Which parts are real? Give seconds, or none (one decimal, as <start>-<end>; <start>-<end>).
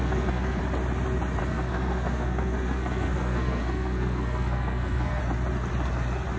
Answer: 0.6-1.4; 5.2-6.4